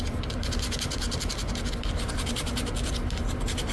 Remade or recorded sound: recorded